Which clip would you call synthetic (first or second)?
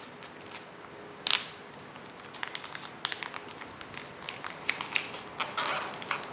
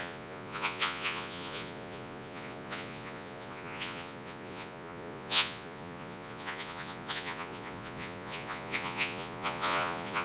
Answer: second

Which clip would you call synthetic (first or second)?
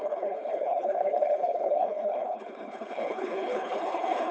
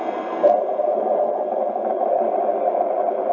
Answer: first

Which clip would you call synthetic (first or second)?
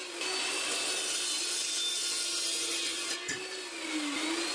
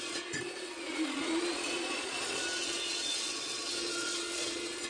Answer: second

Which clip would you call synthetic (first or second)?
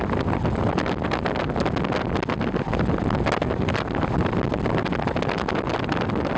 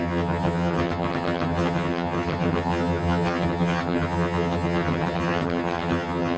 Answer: second